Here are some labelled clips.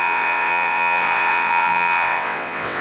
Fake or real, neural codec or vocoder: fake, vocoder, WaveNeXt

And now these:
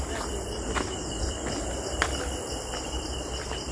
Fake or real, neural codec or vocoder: real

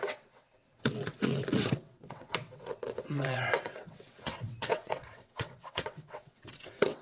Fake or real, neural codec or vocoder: fake, vocoder, WaveNeXt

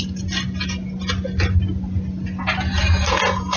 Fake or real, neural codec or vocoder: real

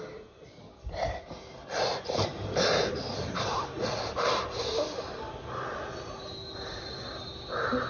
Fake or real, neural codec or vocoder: real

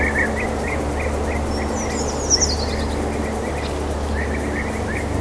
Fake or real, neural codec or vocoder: real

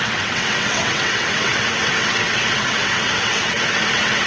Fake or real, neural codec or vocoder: fake, vocoder, WaveNeXt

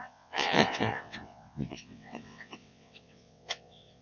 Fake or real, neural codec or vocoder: fake, vocoder, WaveNeXt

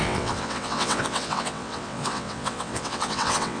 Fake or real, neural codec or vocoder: fake, vocoder, WaveNeXt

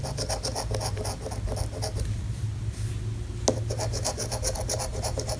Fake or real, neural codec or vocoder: real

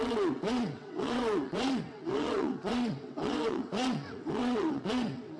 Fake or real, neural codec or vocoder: fake, vocoder, WaveNeXt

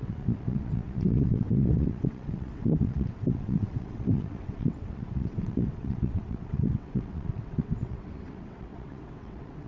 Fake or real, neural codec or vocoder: fake, vocoder, WaveNeXt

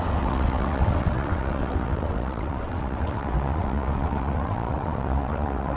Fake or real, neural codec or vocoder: fake, vocoder, WaveNeXt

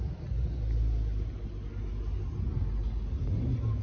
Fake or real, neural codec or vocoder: real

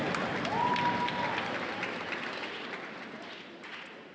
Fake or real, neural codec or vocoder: real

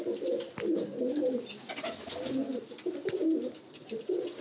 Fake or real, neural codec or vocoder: real